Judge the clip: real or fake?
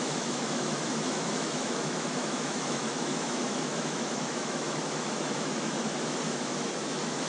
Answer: fake